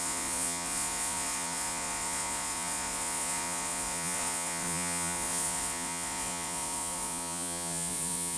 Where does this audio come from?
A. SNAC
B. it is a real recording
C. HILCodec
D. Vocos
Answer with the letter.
D